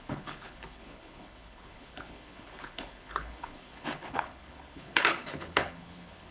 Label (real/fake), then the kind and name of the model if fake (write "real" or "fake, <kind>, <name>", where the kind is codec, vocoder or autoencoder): fake, codec, HILCodec